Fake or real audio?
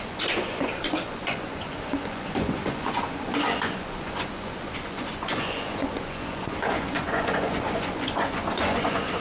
fake